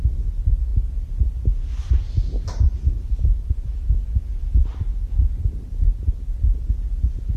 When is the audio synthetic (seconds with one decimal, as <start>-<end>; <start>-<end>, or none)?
none